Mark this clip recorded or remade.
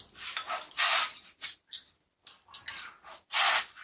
recorded